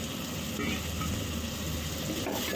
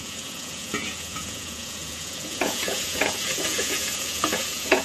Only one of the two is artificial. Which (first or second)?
second